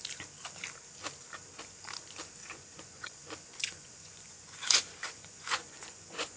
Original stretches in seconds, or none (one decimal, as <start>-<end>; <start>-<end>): 0.0-2.4